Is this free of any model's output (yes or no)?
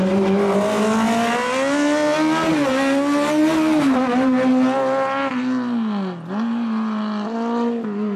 yes